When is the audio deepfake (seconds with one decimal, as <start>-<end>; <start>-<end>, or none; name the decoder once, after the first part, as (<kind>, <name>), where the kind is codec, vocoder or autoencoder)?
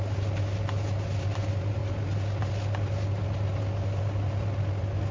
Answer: none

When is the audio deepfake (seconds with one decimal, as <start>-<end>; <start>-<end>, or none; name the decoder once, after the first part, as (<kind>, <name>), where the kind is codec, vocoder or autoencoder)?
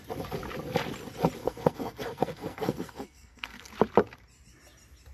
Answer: 1.4-3.7 (codec, SNAC)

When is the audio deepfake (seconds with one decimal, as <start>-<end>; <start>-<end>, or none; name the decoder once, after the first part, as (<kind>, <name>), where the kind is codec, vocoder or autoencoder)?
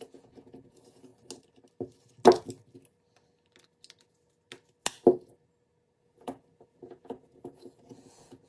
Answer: 0.0-1.1 (vocoder, Vocos); 6.0-8.5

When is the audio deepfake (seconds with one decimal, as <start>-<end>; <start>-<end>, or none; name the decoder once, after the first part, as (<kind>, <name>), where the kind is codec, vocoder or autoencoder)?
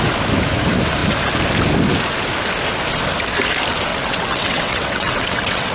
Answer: 3.9-5.7 (vocoder, WaveNeXt)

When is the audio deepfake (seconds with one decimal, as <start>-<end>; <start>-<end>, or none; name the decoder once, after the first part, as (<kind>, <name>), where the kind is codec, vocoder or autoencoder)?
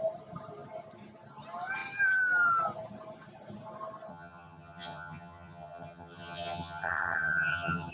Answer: 4.1-7.9 (vocoder, HiFi-GAN)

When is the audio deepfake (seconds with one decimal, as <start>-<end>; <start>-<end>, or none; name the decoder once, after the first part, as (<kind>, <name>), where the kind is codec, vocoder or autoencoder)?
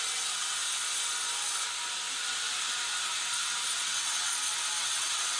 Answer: 0.0-0.6 (vocoder, WaveNeXt); 3.8-4.3; 4.8-5.4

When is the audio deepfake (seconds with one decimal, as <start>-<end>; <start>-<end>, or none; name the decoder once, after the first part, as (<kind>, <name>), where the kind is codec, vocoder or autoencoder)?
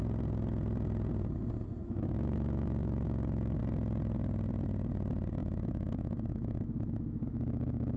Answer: 1.8-3.6 (autoencoder, DAC-VAE); 5.4-8.0